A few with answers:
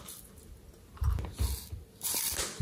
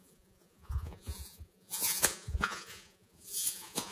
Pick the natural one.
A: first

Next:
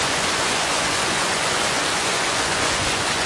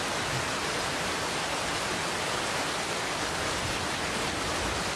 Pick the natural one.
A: second